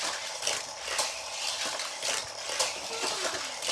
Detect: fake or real real